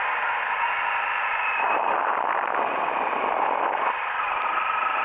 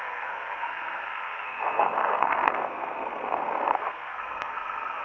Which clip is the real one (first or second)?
first